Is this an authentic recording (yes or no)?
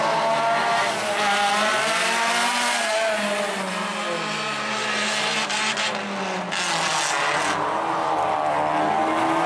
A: yes